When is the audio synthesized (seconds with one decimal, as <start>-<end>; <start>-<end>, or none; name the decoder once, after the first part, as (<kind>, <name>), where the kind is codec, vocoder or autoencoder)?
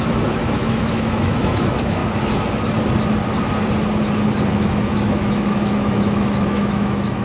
0.0-2.0 (autoencoder, DAC-VAE); 4.5-7.2